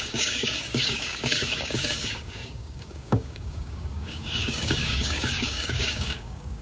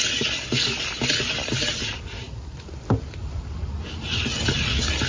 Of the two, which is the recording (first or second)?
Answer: second